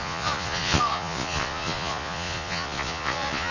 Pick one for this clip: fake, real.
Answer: fake